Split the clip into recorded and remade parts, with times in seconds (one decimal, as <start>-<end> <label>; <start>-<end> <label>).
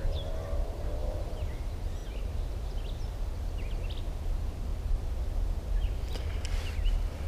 0.0-1.0 recorded; 1.0-1.6 remade; 1.6-2.0 recorded; 2.0-2.5 remade; 2.5-7.3 recorded